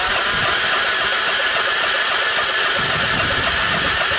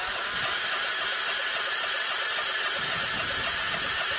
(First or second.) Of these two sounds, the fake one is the first